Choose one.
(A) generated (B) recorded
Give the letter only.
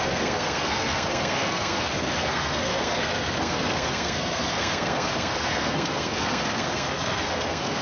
A